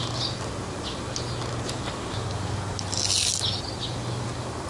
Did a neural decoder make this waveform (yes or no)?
no